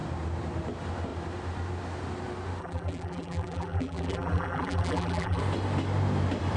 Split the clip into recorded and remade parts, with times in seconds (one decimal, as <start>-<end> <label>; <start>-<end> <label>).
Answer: 0.0-2.6 recorded; 2.6-5.4 remade; 5.4-6.6 recorded

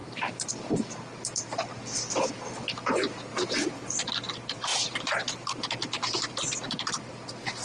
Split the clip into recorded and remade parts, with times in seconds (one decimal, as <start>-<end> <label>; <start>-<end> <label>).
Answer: 0.0-0.5 remade; 0.5-3.3 recorded; 3.3-4.0 remade; 4.0-4.7 recorded; 4.7-5.7 remade; 5.7-7.6 recorded

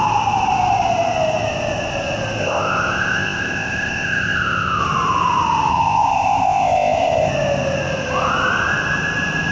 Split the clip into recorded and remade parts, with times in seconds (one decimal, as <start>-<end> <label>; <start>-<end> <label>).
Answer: 0.0-2.4 recorded; 2.4-4.8 remade; 4.8-5.7 recorded; 5.7-7.3 remade; 7.3-9.5 recorded

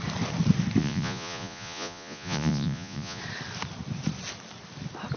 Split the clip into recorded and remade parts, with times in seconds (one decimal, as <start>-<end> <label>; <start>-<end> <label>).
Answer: 0.0-0.8 recorded; 0.8-3.2 remade; 3.2-5.2 recorded

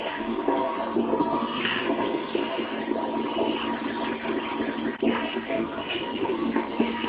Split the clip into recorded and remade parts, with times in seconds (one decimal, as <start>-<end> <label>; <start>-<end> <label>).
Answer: 0.0-2.8 remade; 2.8-5.1 recorded; 5.1-7.1 remade

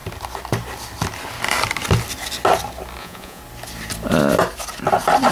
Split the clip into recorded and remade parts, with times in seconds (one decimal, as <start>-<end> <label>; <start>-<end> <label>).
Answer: 0.0-3.0 recorded; 3.0-3.4 remade; 3.4-5.3 recorded

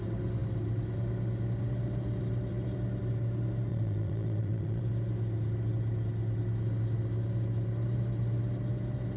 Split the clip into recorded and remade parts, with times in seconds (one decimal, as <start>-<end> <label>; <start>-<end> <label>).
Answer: 0.0-3.7 recorded; 3.7-4.8 remade; 4.8-9.2 recorded